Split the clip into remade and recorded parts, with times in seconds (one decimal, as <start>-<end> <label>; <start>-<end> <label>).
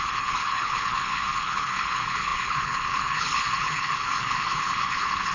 0.0-5.3 remade